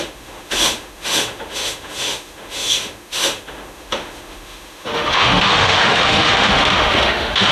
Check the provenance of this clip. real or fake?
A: fake